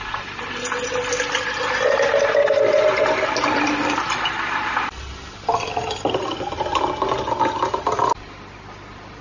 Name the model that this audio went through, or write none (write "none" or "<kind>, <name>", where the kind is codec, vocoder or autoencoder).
none